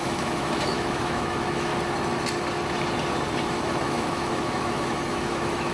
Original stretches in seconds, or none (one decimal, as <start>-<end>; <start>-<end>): 1.7-3.5